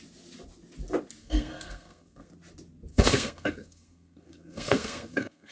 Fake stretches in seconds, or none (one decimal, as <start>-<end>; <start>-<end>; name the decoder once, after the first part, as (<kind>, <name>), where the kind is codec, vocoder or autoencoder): 1.2-2.3 (codec, SNAC); 2.9-5.5